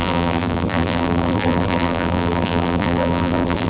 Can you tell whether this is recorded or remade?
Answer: remade